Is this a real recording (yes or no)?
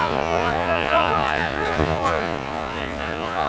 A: no